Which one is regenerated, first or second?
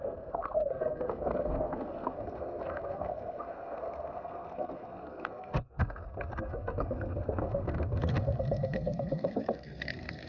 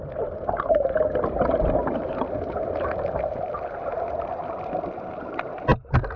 first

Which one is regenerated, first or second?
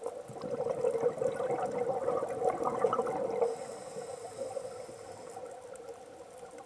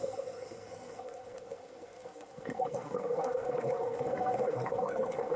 second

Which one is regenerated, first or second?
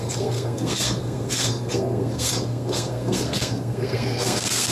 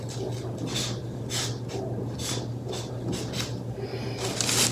first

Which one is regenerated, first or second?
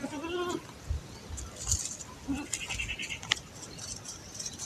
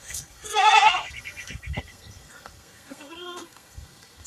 second